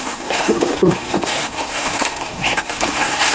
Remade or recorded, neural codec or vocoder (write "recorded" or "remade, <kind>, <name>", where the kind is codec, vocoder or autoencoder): remade, codec, SNAC